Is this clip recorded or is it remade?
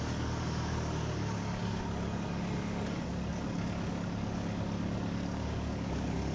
remade